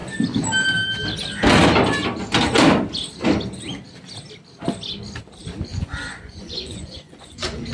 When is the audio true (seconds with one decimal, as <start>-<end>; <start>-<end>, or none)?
0.0-5.7